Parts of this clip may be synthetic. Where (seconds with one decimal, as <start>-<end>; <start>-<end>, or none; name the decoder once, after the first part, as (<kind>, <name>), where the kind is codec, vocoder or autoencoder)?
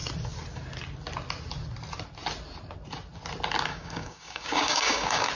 3.7-5.3 (codec, DAC)